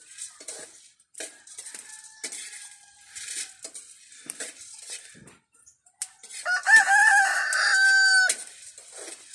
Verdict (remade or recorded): recorded